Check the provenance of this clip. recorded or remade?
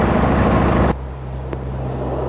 recorded